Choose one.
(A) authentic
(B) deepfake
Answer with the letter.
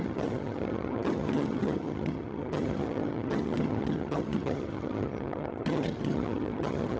B